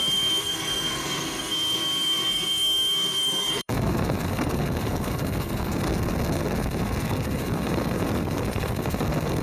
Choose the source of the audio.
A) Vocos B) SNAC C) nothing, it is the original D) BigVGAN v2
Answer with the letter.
B